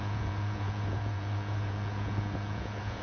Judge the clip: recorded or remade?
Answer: remade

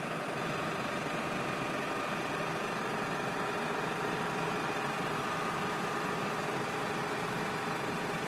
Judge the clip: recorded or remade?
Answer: recorded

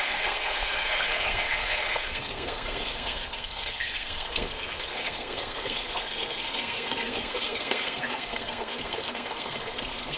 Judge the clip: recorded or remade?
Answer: remade